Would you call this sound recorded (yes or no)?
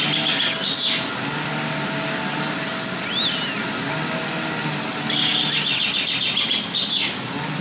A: yes